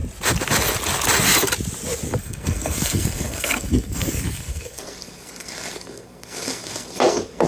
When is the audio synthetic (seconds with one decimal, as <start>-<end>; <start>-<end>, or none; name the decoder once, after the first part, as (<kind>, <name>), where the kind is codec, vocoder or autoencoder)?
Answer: 2.2-7.5 (codec, SNAC)